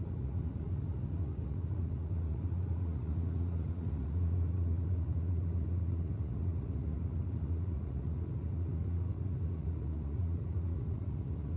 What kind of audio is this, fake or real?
fake